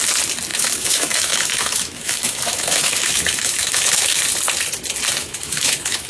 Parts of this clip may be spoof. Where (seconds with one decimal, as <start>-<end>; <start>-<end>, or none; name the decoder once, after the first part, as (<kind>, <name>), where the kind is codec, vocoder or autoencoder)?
0.5-4.2 (autoencoder, DAC-VAE); 5.2-6.1